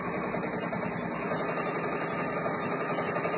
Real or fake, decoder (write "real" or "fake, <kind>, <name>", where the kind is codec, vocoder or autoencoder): real